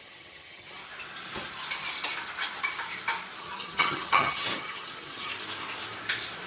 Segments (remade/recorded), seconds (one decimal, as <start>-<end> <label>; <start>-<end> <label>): 0.0-0.8 remade; 0.8-3.4 recorded; 3.4-5.3 remade; 5.3-6.5 recorded